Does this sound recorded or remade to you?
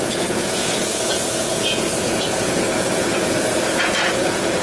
remade